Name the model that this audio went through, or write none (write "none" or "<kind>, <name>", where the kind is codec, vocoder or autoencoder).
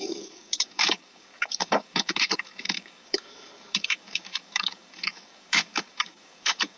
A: codec, DAC